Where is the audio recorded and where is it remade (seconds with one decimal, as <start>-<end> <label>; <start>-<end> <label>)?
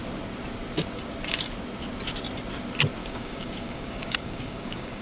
0.0-3.0 recorded; 3.0-5.0 remade